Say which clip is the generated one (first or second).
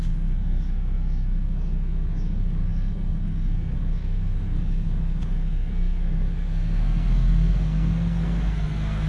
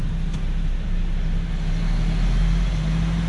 first